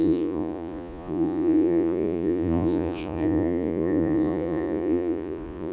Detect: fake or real fake